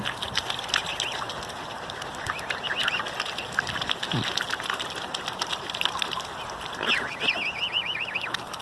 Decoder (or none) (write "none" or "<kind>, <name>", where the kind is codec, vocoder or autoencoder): none